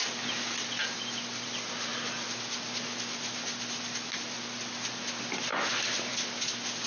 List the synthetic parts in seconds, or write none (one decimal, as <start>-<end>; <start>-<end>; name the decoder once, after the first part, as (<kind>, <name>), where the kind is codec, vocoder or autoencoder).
none